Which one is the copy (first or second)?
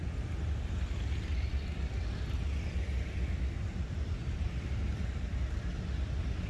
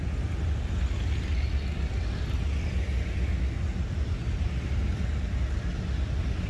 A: first